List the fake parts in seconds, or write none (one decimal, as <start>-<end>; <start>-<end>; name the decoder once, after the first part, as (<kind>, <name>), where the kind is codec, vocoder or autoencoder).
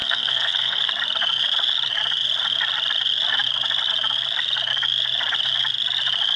0.0-0.9 (codec, SNAC)